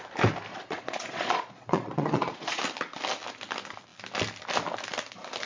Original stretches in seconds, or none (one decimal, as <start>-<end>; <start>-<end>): 0.0-0.5; 2.6-5.5